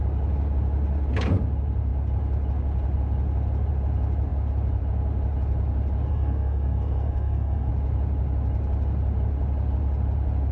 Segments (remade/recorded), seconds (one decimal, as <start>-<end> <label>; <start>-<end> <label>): 0.0-6.1 recorded; 6.1-7.7 remade; 7.7-10.5 recorded